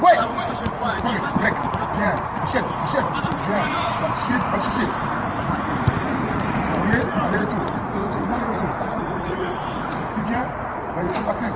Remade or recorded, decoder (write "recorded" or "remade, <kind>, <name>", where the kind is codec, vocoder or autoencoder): remade, vocoder, Vocos